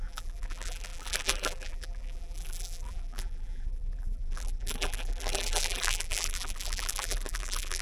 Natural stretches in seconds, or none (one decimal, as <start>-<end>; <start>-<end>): none

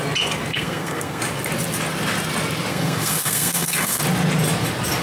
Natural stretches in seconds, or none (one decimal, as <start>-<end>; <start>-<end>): 0.0-0.5; 1.2-2.7; 4.0-5.0

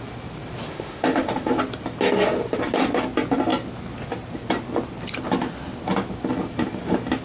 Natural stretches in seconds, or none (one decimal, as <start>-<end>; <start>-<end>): 0.0-0.7; 1.5-7.2